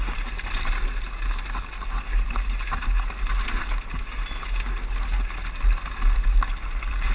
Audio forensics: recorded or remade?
recorded